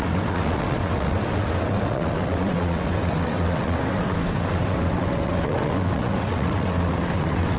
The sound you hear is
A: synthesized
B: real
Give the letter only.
A